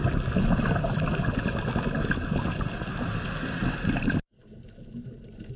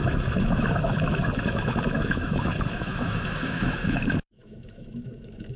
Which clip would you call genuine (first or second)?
first